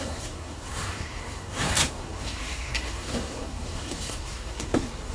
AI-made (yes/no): yes